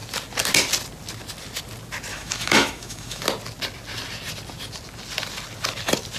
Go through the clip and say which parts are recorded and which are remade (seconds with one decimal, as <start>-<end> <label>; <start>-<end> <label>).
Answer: 0.0-2.1 recorded; 2.1-3.2 remade; 3.2-6.2 recorded